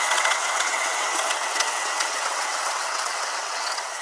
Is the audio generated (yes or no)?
yes